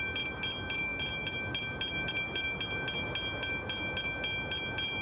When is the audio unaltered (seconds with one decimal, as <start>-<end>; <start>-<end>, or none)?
0.0-5.0